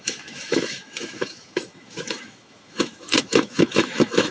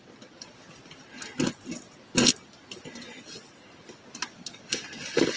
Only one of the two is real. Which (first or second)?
second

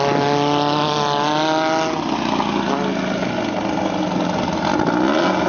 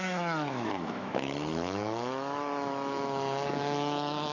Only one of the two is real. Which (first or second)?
first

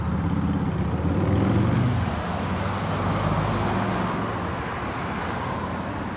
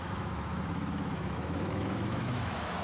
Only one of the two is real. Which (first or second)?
first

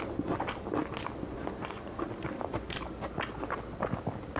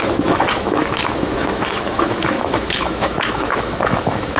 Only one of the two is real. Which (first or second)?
first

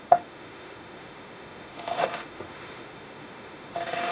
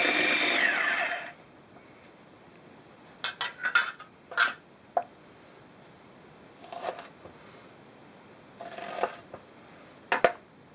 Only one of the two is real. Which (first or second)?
second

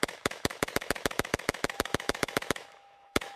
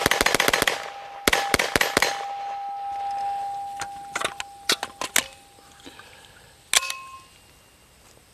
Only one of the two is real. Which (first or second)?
second